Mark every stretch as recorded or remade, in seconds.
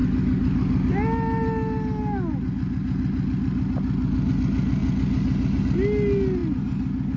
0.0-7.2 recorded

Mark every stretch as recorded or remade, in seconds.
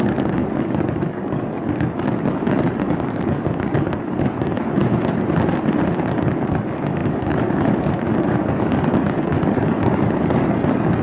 0.0-4.8 remade; 4.8-6.1 recorded; 6.1-11.0 remade